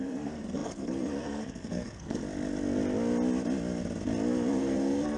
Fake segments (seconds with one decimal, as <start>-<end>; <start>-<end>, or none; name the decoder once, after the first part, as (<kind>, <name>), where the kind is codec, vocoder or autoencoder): 0.0-2.2 (codec, SNAC); 4.6-5.2